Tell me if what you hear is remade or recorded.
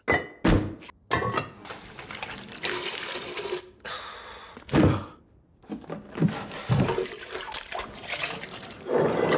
recorded